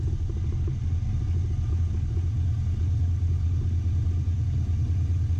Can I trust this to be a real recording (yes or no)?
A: yes